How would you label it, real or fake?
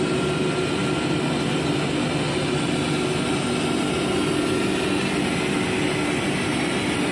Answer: real